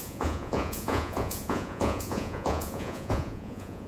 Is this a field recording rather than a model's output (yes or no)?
no